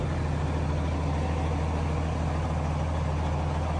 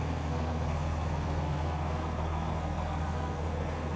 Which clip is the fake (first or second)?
second